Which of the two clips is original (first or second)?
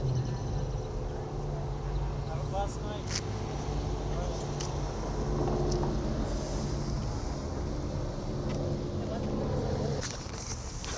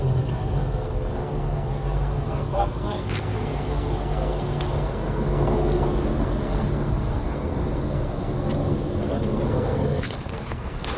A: first